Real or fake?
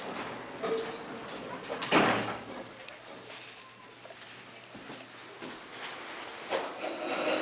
real